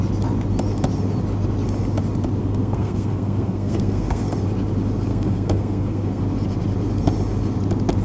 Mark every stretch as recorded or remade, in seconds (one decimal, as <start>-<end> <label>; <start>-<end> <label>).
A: 0.0-2.4 recorded; 2.4-4.2 remade; 4.2-5.1 recorded; 5.1-6.2 remade; 6.2-8.0 recorded